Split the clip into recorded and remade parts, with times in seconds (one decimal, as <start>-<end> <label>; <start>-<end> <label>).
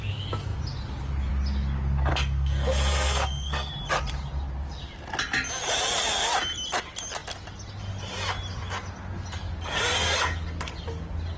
0.0-2.1 recorded; 2.1-3.7 remade; 3.7-11.4 recorded